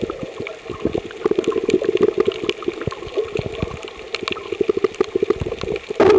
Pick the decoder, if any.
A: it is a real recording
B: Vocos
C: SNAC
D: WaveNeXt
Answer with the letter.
A